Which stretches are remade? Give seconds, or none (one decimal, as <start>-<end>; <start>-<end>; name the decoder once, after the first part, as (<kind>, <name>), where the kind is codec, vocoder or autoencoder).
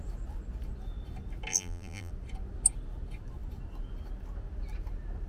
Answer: 1.5-2.1 (vocoder, BigVGAN v2)